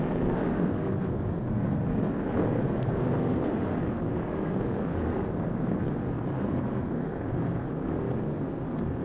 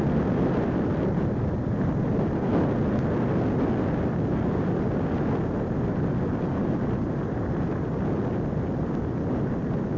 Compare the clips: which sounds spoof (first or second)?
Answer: first